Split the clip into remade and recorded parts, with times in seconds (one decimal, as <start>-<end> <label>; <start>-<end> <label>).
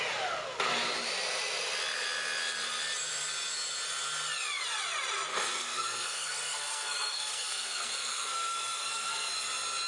0.0-5.3 recorded; 5.3-9.3 remade; 9.3-9.9 recorded